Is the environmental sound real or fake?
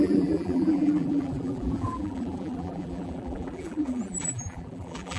fake